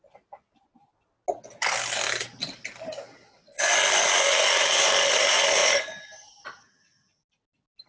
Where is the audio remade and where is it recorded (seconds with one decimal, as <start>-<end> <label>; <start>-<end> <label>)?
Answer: 0.0-5.6 recorded; 5.6-6.4 remade; 6.4-7.9 recorded